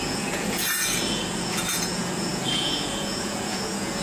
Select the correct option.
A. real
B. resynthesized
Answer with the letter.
B